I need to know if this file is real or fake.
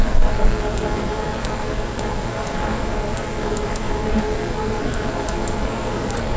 fake